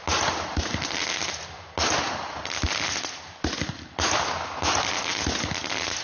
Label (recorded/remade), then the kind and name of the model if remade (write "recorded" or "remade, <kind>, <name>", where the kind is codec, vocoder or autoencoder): recorded